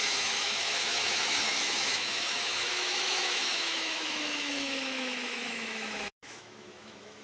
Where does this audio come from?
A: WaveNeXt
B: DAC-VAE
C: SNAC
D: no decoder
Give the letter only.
B